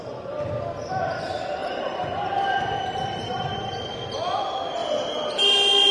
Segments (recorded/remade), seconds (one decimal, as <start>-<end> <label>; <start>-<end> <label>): 0.0-1.6 recorded; 1.6-3.5 remade; 3.5-4.8 recorded; 4.8-5.4 remade; 5.4-5.9 recorded